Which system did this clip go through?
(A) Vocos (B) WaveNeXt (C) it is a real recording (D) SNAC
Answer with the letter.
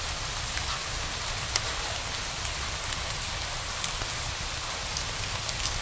C